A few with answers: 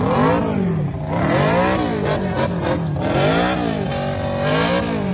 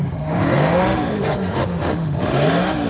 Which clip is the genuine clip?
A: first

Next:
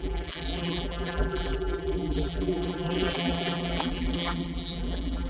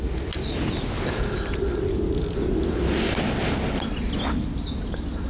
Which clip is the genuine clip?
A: second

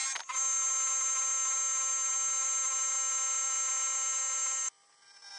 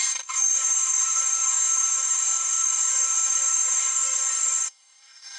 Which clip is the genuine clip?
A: first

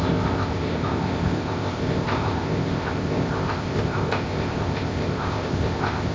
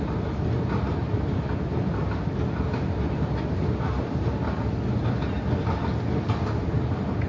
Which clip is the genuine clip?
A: second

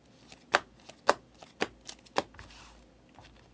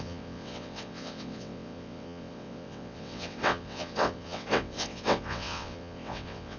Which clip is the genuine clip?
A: first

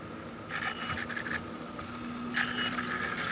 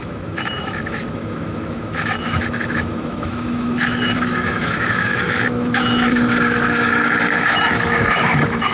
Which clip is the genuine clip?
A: first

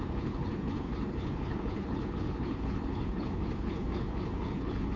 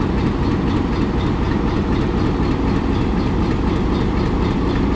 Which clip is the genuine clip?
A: second